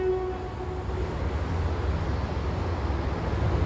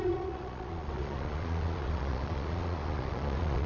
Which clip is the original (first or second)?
first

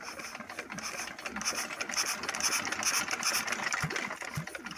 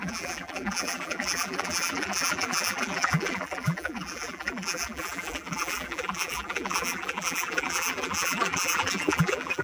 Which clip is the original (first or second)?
first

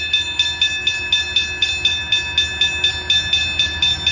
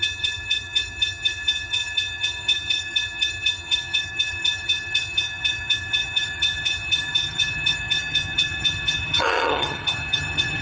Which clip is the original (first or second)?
first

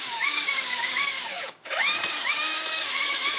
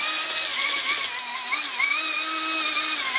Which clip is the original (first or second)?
second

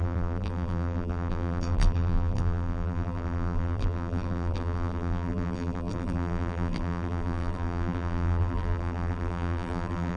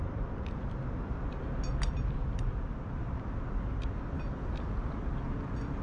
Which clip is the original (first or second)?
second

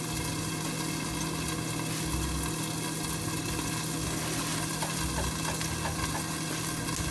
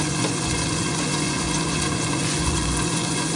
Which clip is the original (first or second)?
first